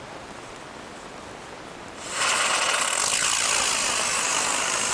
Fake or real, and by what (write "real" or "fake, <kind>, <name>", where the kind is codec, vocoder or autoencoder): real